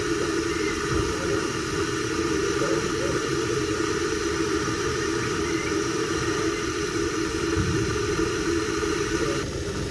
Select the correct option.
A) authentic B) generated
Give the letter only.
B